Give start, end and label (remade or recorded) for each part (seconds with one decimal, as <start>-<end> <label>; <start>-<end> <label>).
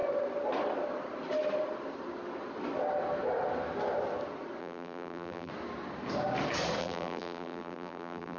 0.0-4.6 recorded; 4.6-5.5 remade; 5.5-6.8 recorded; 6.8-8.4 remade